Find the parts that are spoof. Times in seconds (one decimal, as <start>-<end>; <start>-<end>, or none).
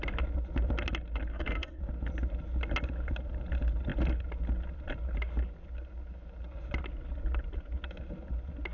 1.3-1.8